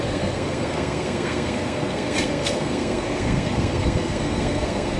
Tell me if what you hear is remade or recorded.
remade